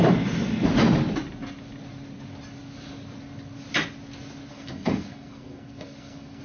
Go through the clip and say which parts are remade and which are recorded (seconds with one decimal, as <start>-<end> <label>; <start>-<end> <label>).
0.0-4.5 recorded; 4.5-6.4 remade